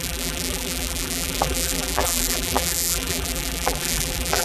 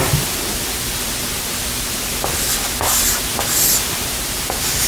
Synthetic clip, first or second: first